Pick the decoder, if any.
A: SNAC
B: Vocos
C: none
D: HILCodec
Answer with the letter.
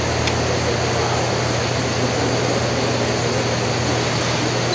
C